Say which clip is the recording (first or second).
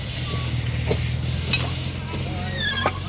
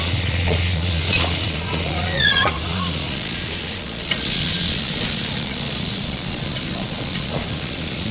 first